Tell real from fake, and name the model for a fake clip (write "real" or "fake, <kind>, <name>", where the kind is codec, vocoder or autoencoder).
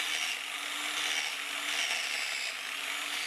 real